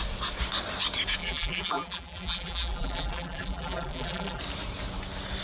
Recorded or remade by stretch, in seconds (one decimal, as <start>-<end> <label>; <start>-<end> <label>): 0.0-1.2 recorded; 1.2-4.4 remade; 4.4-5.4 recorded